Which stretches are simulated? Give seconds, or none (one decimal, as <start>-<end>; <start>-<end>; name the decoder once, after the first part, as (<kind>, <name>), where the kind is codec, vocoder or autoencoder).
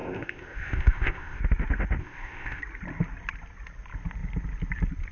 0.0-1.4 (codec, ZipCodec); 2.0-2.6